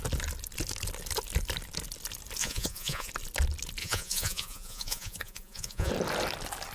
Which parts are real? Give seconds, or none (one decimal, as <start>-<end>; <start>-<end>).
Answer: 0.0-2.4; 3.1-3.8; 5.9-6.7